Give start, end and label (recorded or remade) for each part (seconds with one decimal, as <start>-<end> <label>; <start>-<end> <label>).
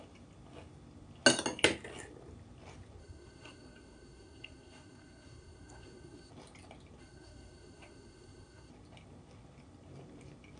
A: 0.0-3.0 recorded; 3.0-6.3 remade; 6.3-7.0 recorded; 7.0-8.7 remade; 8.7-10.6 recorded